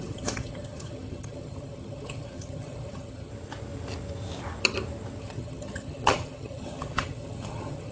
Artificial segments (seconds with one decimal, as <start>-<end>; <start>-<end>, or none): 0.0-3.3; 5.2-7.9